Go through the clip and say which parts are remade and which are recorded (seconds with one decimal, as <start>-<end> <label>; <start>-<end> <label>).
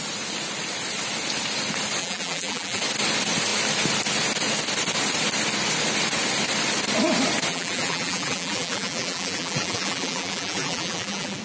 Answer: 0.0-2.0 recorded; 2.0-2.8 remade; 2.8-7.5 recorded; 7.5-11.4 remade